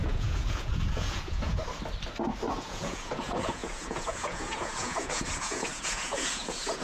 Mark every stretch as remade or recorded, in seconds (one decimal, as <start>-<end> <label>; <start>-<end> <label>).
0.0-1.6 remade; 1.6-2.5 recorded; 2.5-6.8 remade